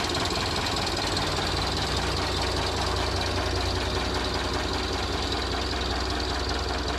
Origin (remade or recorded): recorded